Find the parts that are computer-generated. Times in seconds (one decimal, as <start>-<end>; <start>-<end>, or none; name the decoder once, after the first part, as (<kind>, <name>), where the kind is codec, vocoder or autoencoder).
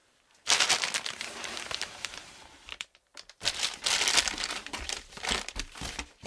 0.7-6.3 (vocoder, BigVGAN v2)